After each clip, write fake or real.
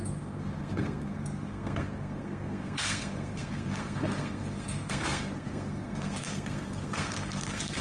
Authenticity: fake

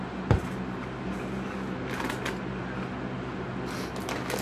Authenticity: real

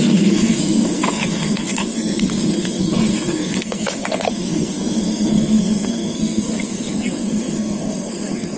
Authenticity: fake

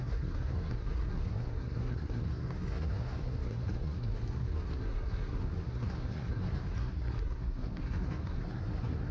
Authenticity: fake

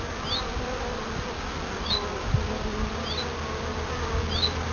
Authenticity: real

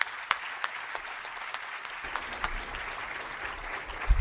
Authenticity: real